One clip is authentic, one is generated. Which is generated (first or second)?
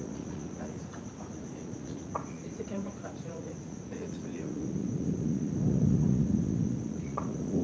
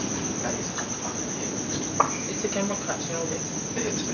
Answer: first